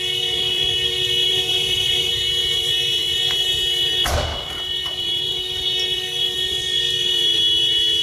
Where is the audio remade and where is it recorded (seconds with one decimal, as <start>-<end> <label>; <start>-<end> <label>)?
0.0-1.3 recorded; 1.3-2.1 remade; 2.1-8.0 recorded